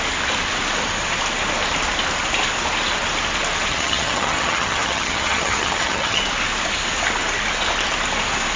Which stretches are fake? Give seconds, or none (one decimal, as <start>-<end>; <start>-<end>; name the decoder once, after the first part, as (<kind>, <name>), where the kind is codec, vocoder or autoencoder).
3.7-6.2 (vocoder, HiFi-GAN)